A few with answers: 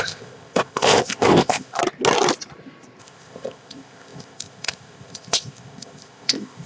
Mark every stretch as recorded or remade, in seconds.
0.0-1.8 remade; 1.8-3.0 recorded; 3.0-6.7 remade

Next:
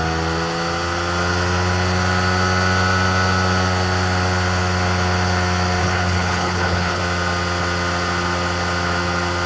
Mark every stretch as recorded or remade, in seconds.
0.0-5.8 recorded; 5.8-7.0 remade; 7.0-9.5 recorded